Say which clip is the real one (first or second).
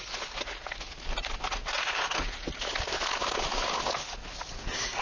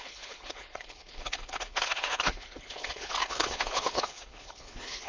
first